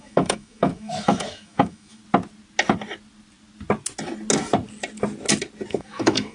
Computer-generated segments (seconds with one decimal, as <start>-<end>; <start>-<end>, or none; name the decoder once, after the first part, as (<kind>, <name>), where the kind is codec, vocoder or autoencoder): 0.0-2.0 (autoencoder, DAC-VAE); 5.7-6.3